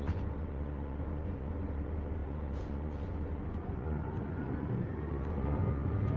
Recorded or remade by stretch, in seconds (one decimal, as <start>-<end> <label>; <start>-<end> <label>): 0.0-6.2 remade